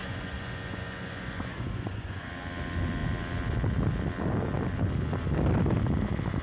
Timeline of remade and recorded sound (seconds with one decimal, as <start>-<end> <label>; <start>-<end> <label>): 0.0-2.3 remade; 2.3-6.4 recorded